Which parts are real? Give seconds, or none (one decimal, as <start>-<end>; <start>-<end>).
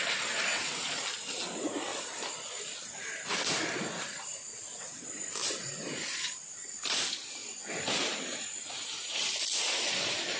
0.0-0.5; 1.0-4.5; 5.0-10.4